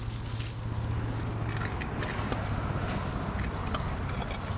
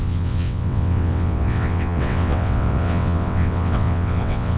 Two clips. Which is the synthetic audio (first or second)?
second